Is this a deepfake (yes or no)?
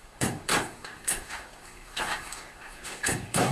yes